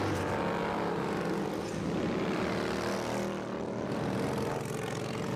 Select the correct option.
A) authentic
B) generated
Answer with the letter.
A